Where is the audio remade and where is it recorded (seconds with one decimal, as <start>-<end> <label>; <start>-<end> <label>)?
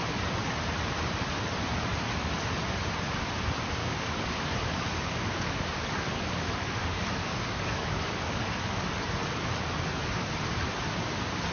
0.0-3.8 recorded; 3.8-8.9 remade; 8.9-11.5 recorded